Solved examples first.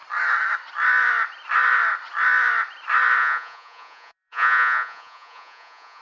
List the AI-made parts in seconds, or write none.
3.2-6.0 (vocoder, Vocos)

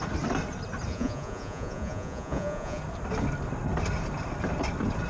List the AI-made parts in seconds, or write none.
0.9-2.8 (vocoder, Vocos)